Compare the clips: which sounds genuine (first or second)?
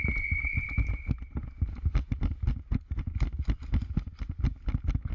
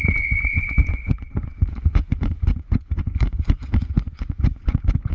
first